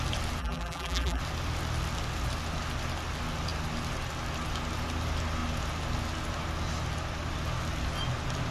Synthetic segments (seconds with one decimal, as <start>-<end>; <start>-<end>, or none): 0.4-1.2